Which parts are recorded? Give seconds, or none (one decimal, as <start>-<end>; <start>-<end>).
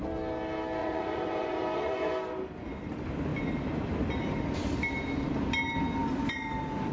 0.0-0.8; 2.1-6.9